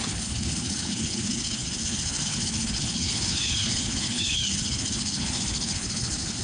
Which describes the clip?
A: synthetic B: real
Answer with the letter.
A